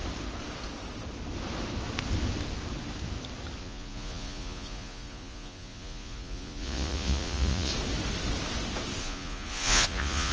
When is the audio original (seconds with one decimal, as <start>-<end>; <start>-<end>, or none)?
0.0-3.6; 7.7-9.0